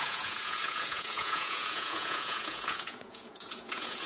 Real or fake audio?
fake